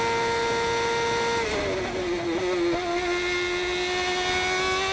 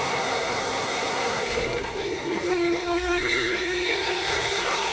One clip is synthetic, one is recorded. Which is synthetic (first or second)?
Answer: second